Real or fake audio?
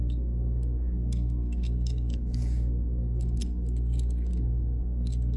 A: fake